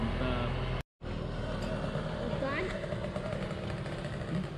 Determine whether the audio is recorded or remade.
recorded